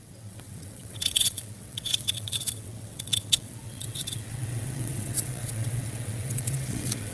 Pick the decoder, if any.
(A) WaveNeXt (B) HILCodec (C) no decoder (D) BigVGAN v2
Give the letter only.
A